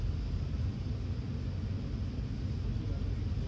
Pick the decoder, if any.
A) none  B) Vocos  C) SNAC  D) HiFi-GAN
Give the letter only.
A